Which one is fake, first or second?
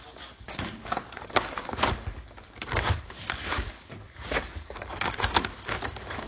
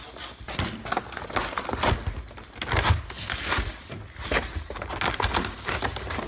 first